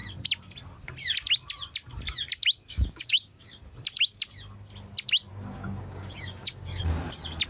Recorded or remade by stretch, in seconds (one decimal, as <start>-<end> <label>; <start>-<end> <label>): 0.0-2.7 recorded; 2.7-3.6 remade; 3.6-5.3 recorded; 5.3-6.9 remade; 6.9-7.5 recorded